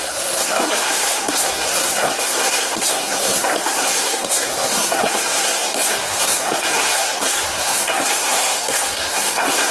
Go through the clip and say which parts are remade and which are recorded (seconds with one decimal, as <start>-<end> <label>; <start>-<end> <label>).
0.0-9.7 remade